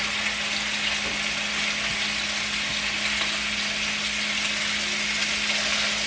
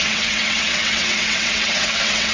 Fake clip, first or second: second